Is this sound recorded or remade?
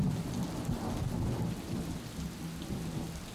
recorded